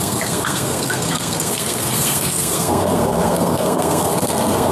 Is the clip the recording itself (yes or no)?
no